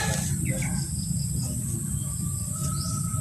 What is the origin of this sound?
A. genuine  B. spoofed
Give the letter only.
A